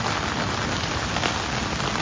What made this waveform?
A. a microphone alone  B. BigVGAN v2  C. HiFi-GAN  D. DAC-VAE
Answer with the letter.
A